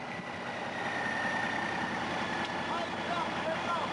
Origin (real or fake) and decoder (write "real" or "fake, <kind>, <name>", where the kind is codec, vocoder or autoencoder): real